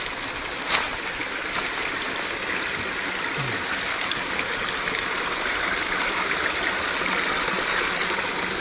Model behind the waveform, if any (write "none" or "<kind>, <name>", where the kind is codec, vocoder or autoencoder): none